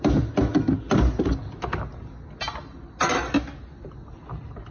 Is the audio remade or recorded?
recorded